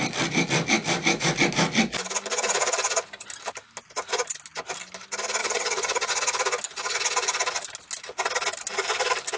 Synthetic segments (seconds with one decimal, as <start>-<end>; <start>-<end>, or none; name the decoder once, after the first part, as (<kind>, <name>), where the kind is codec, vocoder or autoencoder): 5.4-6.1 (vocoder, HiFi-GAN)